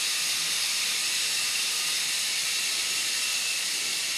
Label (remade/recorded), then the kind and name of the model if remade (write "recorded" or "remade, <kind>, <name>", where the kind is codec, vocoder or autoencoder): recorded